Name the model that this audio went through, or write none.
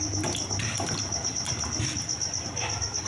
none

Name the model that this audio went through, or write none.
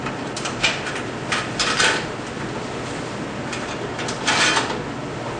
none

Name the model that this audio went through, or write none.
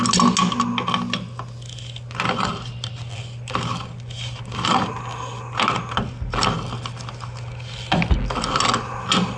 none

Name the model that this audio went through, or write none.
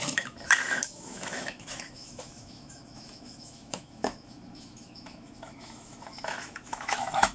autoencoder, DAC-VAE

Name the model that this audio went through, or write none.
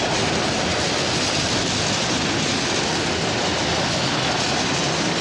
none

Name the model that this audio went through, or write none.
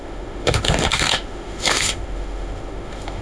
autoencoder, DAC-VAE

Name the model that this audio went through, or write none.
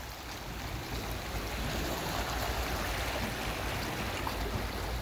none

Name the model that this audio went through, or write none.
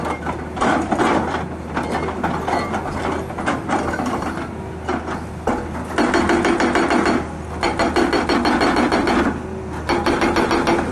none